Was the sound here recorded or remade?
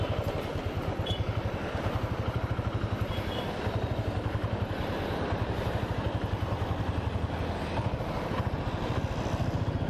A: recorded